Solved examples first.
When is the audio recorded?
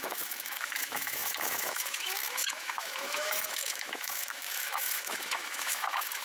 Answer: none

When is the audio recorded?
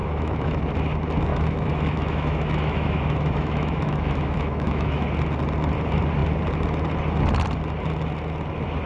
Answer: 0.6-1.3; 5.1-8.9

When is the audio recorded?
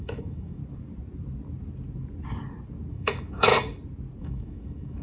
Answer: 0.6-2.9; 3.5-4.2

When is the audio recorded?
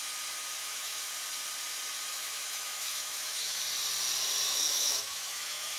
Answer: 0.0-0.6; 1.1-2.1; 3.6-4.5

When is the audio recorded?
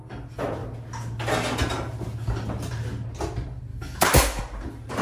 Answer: 0.0-3.7; 4.4-5.0